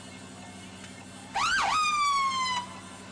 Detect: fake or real real